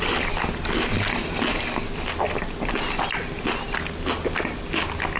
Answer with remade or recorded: recorded